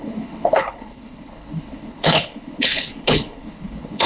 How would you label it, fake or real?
fake